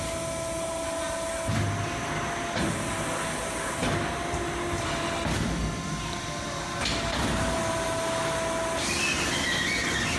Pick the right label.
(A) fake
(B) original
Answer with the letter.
B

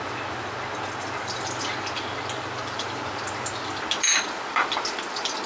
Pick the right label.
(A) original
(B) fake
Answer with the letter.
B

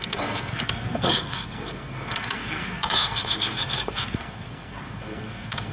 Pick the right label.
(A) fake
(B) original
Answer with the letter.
A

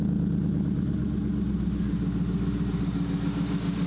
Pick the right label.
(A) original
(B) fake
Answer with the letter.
A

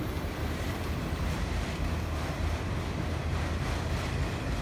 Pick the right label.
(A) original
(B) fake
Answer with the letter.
A